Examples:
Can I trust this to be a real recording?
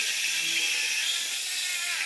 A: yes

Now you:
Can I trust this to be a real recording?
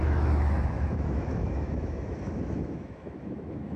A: no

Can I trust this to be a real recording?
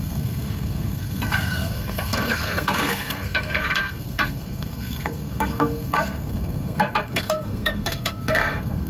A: no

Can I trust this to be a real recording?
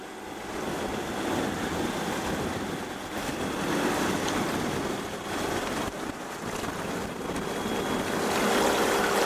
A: yes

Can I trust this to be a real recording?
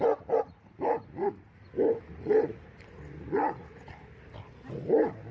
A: yes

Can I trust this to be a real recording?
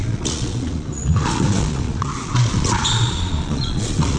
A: no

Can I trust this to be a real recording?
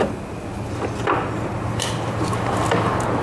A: yes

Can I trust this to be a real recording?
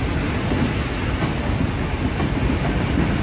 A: yes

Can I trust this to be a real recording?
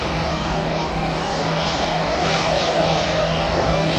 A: no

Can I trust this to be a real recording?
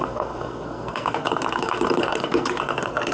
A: no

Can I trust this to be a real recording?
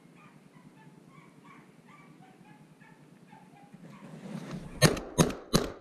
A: yes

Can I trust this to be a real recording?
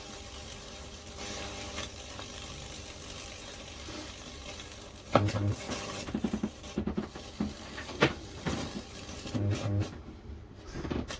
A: no